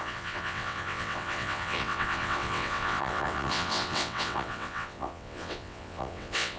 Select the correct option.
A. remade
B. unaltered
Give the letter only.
A